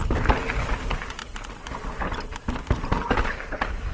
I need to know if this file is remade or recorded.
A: recorded